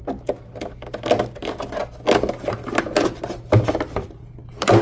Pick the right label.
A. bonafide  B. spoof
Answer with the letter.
A